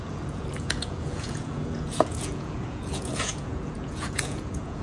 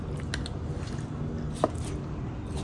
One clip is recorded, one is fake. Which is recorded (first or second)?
second